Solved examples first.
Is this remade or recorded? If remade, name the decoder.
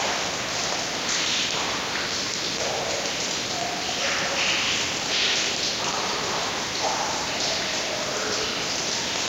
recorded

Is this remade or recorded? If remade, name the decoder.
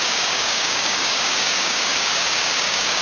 remade, codec, DAC